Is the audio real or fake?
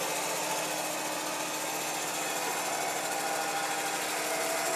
real